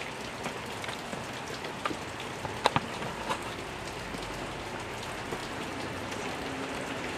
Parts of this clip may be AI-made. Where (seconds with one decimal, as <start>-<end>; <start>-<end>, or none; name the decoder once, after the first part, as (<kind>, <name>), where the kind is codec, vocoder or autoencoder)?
5.4-7.2 (vocoder, BigVGAN v2)